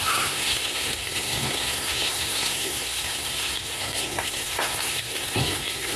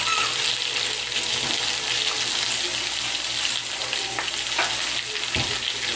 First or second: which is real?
second